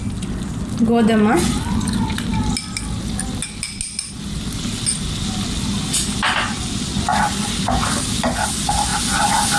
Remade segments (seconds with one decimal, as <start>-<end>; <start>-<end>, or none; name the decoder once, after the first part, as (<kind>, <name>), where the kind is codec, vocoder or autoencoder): none